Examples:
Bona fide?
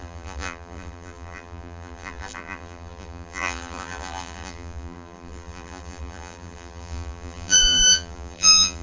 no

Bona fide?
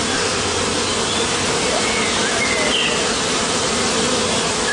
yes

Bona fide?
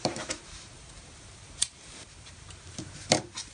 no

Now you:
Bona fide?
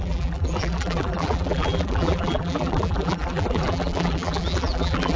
no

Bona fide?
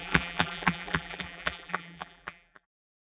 no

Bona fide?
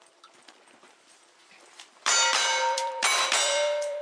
no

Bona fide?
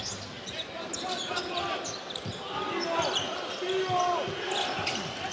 yes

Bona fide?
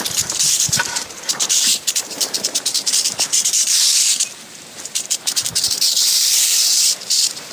no